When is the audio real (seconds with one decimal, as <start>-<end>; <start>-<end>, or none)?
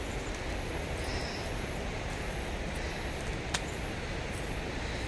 0.0-5.1